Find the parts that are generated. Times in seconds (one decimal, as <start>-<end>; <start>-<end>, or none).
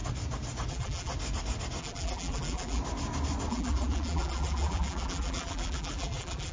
0.7-1.1; 1.8-2.8; 3.5-6.5